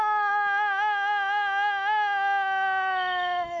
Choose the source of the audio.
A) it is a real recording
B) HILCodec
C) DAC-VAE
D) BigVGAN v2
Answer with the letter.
A